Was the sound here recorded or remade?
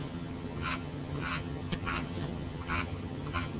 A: remade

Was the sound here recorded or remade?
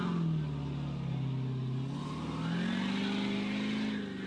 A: recorded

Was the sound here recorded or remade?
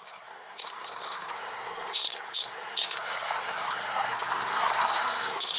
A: remade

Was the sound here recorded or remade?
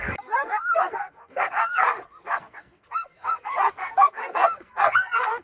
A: remade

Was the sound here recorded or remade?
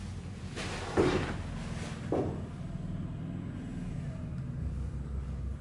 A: recorded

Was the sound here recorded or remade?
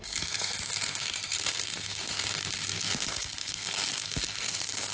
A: remade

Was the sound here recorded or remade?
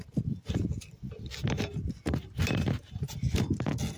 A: recorded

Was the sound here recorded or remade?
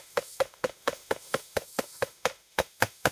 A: remade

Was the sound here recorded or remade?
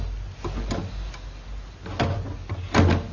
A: recorded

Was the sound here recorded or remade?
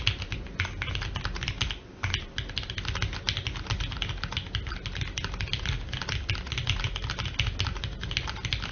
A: recorded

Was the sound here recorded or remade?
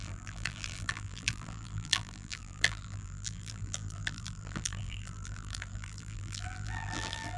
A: remade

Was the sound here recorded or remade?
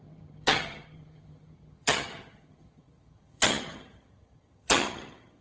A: remade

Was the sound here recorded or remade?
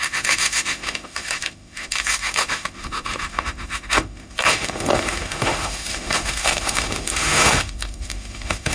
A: remade